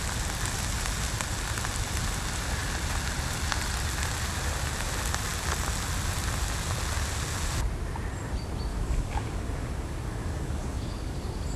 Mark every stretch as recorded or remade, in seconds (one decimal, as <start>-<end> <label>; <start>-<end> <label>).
0.0-8.7 recorded; 8.7-11.6 remade